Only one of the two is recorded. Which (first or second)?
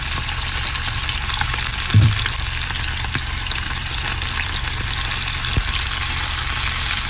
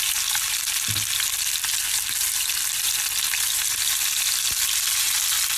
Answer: second